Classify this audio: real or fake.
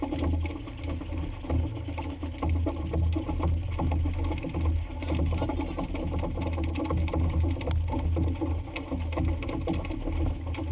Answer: real